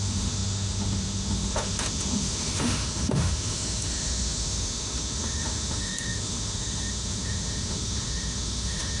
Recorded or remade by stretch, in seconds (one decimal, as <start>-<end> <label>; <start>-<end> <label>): 0.0-9.0 remade